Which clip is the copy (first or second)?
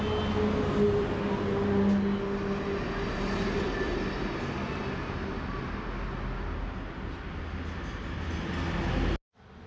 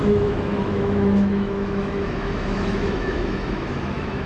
second